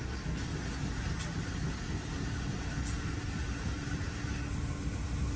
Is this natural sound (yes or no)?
yes